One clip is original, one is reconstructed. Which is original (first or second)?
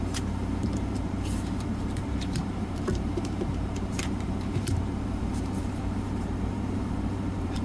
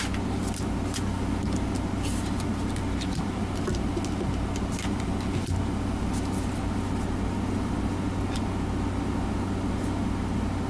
second